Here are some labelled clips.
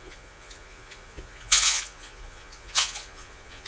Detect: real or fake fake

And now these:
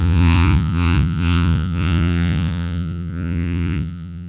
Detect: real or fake fake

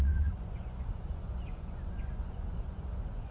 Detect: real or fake fake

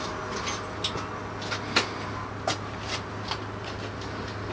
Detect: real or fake real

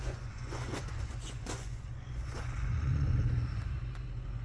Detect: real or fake fake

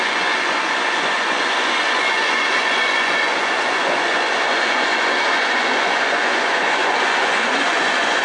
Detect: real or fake fake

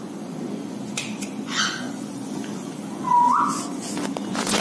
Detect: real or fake fake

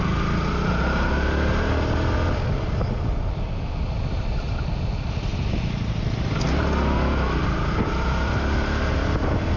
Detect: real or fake real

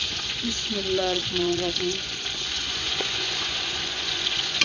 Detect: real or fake fake